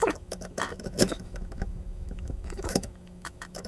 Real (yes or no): no